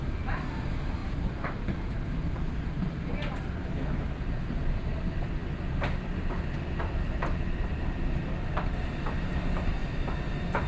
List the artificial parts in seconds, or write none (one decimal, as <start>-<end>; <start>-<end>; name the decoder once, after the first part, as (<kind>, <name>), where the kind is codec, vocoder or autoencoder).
3.6-4.2 (autoencoder, DAC-VAE)